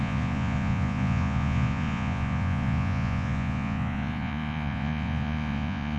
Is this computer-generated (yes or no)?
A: yes